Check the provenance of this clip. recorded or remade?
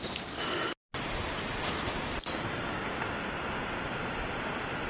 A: recorded